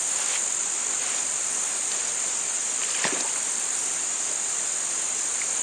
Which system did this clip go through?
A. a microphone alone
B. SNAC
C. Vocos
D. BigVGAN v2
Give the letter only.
A